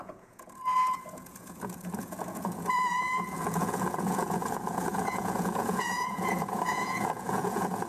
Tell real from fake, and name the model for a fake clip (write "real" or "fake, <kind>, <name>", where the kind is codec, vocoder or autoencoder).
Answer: fake, vocoder, Vocos